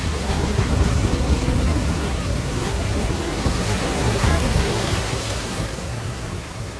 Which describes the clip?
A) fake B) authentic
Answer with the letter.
A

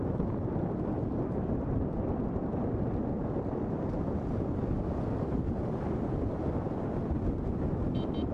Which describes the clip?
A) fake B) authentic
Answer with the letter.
B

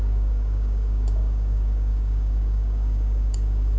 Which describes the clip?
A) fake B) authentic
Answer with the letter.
A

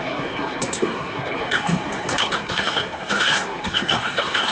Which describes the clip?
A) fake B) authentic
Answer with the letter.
A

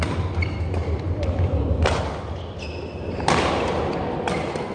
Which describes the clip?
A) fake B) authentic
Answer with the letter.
B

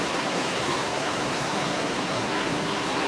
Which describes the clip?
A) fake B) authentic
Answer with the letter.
A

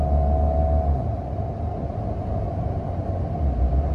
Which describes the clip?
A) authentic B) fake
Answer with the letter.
A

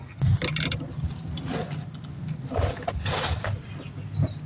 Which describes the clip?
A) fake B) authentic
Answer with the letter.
B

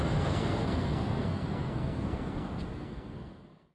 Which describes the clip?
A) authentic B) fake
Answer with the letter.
B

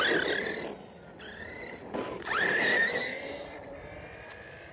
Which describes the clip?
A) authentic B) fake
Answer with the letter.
A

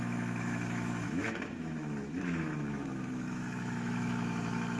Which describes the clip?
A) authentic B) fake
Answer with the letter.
B